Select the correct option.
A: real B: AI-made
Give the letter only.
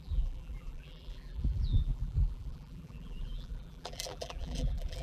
B